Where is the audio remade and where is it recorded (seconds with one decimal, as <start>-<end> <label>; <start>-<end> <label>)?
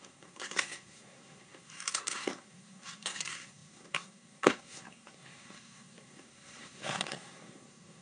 0.0-8.0 remade